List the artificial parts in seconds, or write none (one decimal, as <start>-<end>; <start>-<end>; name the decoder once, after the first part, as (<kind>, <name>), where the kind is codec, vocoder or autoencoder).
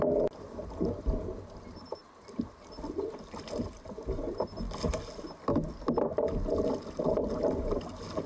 none